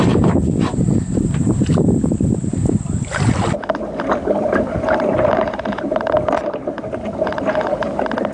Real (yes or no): yes